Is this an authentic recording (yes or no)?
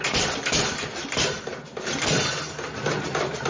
yes